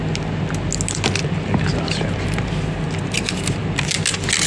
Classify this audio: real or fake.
real